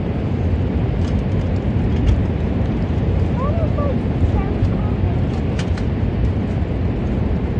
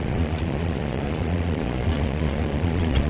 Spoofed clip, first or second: second